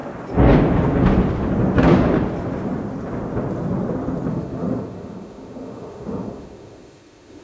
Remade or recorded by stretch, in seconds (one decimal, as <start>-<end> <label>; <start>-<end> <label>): 0.0-4.3 recorded; 4.3-7.4 remade